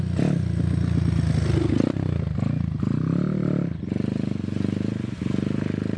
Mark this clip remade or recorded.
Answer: recorded